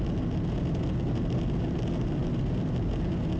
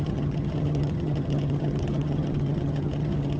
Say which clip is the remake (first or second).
second